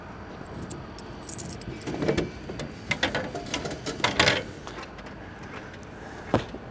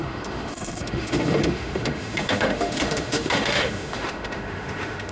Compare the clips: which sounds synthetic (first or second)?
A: second